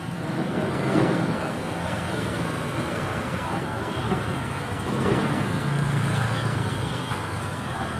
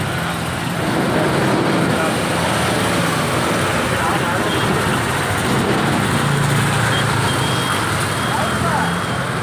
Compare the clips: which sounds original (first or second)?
second